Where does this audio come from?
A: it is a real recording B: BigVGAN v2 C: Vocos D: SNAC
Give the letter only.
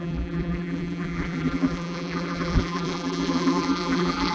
B